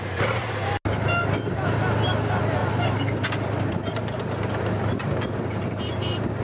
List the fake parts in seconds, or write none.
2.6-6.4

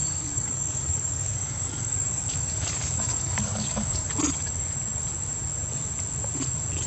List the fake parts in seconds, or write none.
0.0-4.1

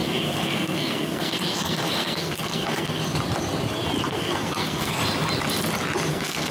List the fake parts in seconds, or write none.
0.0-3.0; 4.1-5.0; 6.1-6.5

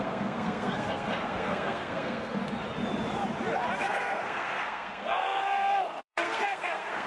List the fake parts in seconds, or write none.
0.0-2.4; 3.8-7.1

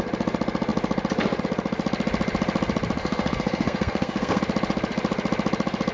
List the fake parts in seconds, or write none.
3.0-4.4